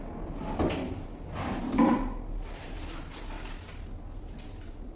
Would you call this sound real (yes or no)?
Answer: yes